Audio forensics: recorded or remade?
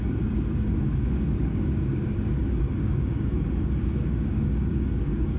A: remade